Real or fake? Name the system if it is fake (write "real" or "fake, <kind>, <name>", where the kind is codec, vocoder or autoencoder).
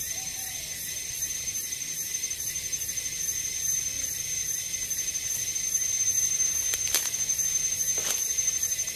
fake, vocoder, BigVGAN v2